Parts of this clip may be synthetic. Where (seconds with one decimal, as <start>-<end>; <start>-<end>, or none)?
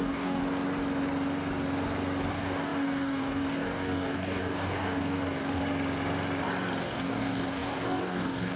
0.0-0.4; 2.3-5.6; 6.8-8.6